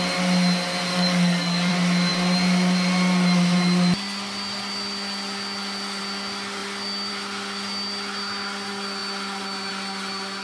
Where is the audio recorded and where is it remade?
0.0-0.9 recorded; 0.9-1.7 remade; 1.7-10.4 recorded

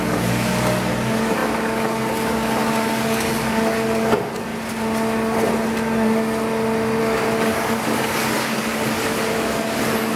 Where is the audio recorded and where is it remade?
0.0-4.5 remade; 4.5-7.0 recorded; 7.0-10.2 remade

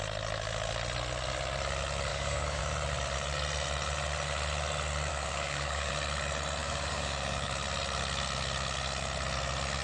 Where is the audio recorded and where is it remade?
0.0-2.1 recorded; 2.1-2.6 remade; 2.6-5.1 recorded; 5.1-5.9 remade; 5.9-6.6 recorded; 6.6-7.5 remade; 7.5-9.8 recorded

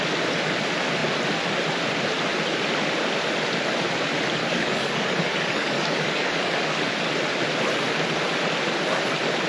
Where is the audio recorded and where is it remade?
0.0-4.4 recorded; 4.4-6.8 remade; 6.8-9.5 recorded

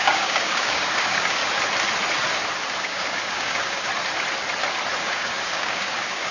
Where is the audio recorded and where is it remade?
0.0-1.4 remade; 1.4-2.8 recorded; 2.8-3.9 remade; 3.9-5.0 recorded; 5.0-6.3 remade

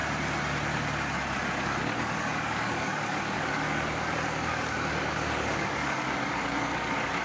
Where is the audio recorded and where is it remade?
0.0-1.8 recorded; 1.8-7.2 remade

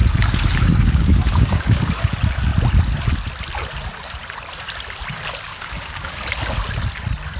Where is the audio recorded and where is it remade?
0.0-2.1 remade; 2.1-5.5 recorded; 5.5-6.2 remade; 6.2-7.4 recorded